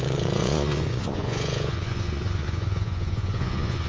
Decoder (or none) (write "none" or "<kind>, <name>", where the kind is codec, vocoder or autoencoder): vocoder, Vocos